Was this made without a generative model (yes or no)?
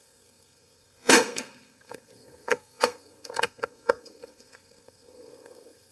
no